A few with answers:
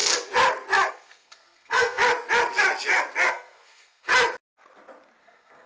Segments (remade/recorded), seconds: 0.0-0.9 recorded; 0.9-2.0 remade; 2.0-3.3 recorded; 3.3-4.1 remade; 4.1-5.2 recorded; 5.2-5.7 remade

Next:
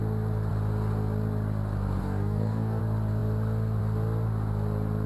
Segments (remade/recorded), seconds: 0.0-2.0 recorded; 2.0-2.8 remade; 2.8-5.1 recorded

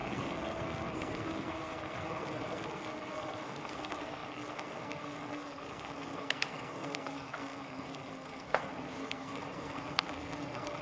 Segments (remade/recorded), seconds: 0.0-10.8 remade

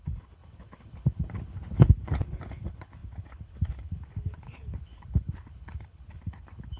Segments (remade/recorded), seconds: 0.0-6.8 remade

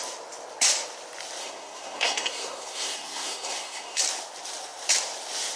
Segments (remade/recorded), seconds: 0.0-1.4 recorded; 1.4-4.0 remade; 4.0-5.6 recorded

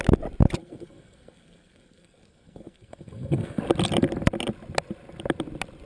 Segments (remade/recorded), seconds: 0.0-0.6 recorded; 0.6-3.6 remade; 3.6-5.9 recorded

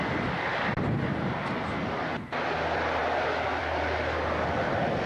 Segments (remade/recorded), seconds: 0.0-0.5 recorded; 0.5-1.1 remade; 1.1-5.1 recorded

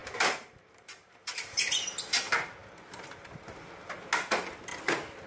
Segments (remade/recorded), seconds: 0.0-2.2 remade; 2.2-5.3 recorded